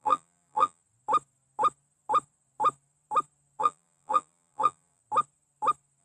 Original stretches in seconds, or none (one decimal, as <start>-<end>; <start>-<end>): 0.8-3.6; 5.0-6.0